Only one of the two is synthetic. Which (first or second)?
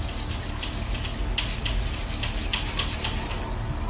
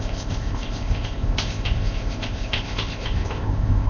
second